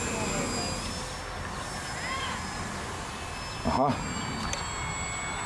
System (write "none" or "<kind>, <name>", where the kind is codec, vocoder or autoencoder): none